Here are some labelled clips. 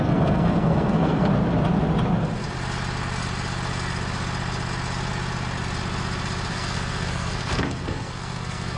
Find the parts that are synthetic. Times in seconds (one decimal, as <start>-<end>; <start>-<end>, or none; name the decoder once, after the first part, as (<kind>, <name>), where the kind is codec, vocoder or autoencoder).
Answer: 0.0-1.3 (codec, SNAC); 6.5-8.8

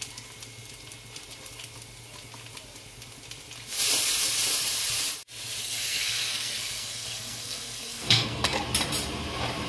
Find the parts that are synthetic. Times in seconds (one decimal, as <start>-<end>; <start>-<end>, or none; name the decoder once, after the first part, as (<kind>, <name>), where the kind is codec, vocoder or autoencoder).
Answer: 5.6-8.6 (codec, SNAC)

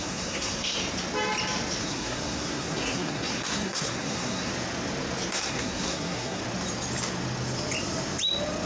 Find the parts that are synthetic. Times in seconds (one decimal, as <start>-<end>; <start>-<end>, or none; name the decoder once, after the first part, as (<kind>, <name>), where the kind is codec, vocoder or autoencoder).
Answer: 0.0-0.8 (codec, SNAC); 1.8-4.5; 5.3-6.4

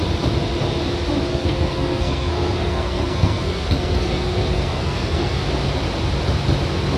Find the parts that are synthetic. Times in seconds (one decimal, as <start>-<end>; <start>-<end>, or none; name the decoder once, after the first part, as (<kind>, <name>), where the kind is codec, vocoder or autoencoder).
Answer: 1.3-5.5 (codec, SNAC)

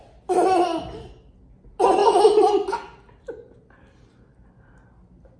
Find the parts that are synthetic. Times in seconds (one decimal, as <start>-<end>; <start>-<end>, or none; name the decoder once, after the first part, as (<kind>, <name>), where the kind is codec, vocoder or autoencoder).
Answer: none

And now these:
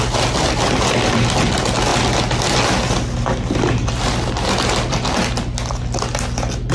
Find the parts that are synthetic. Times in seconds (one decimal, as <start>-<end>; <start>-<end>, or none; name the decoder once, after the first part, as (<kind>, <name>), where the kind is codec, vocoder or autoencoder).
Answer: none